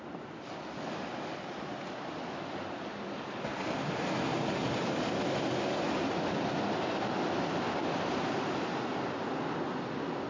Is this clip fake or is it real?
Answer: real